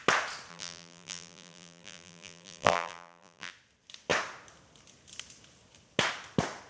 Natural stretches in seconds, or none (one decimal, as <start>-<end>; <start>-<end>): 0.0-0.5; 3.5-6.7